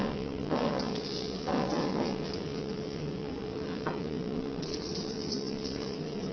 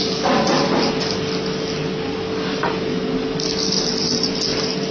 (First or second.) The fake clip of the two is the first